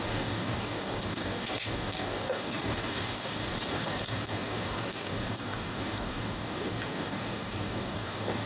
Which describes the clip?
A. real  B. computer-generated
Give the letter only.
B